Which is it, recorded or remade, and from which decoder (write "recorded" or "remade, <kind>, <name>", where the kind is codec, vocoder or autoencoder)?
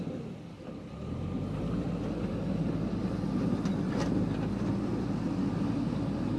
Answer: recorded